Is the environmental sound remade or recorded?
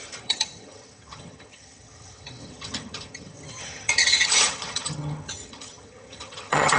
remade